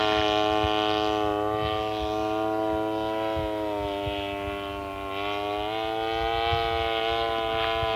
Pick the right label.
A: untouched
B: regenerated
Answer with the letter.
A